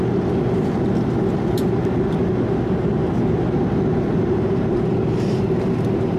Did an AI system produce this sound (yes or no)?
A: no